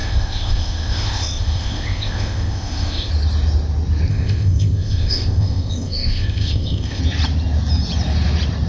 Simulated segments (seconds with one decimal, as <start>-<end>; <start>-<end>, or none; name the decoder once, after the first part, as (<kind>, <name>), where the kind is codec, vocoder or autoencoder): 0.0-3.1 (codec, ZipCodec); 4.1-7.0